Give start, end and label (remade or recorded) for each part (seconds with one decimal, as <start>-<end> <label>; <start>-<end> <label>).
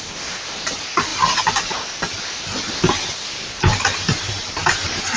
0.0-1.1 recorded; 1.1-2.4 remade; 2.4-5.2 recorded